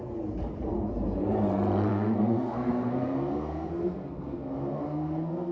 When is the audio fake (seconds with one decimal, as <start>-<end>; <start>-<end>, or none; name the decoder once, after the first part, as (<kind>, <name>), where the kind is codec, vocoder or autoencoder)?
1.9-5.5 (codec, SNAC)